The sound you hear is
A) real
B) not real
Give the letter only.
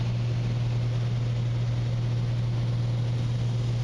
A